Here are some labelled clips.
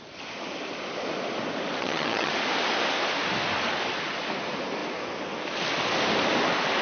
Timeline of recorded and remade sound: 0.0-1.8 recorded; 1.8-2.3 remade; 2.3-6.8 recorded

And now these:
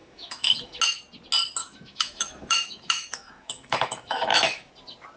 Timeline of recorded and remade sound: 0.0-0.8 remade; 0.8-1.6 recorded; 1.6-4.7 remade; 4.7-5.2 recorded